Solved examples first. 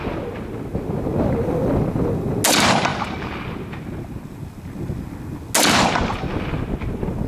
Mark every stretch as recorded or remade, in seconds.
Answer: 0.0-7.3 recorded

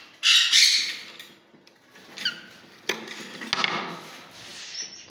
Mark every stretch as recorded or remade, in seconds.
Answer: 0.0-4.5 recorded; 4.5-5.1 remade

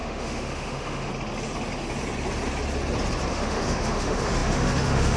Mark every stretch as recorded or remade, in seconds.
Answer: 0.0-1.1 remade; 1.1-3.3 recorded; 3.3-5.2 remade

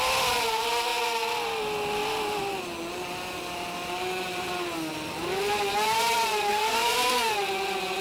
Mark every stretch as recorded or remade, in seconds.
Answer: 0.0-6.5 recorded; 6.5-7.3 remade; 7.3-8.0 recorded

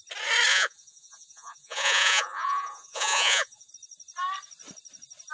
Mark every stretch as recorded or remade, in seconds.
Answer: 0.0-0.5 recorded; 0.5-3.7 remade; 3.7-5.3 recorded

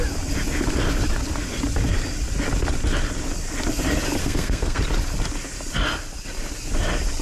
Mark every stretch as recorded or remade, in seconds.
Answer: 0.0-4.2 recorded; 4.2-4.8 remade; 4.8-7.2 recorded